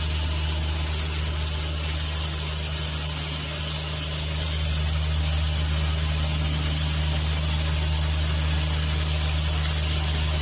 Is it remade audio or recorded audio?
recorded